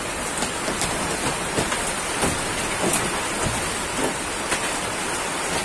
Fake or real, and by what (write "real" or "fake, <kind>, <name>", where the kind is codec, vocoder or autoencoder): real